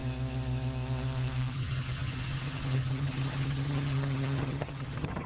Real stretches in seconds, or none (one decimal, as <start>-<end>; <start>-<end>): 0.0-1.5